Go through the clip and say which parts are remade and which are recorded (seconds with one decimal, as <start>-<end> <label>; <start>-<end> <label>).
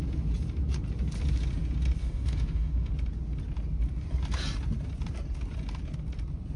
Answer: 0.0-2.0 recorded; 2.0-2.9 remade; 2.9-6.6 recorded